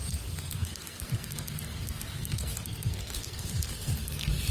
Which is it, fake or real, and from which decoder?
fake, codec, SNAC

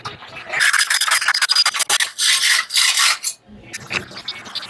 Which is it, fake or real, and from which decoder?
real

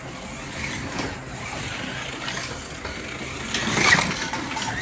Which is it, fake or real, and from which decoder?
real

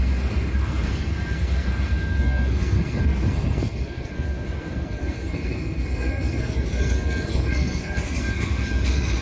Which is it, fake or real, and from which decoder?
fake, codec, SNAC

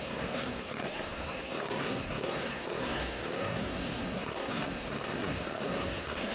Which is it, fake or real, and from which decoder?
fake, codec, SNAC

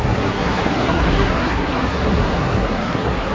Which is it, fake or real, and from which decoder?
fake, codec, SNAC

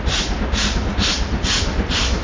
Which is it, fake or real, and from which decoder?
real